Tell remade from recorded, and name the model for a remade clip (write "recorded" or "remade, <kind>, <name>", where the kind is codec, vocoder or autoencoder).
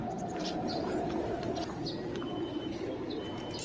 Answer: recorded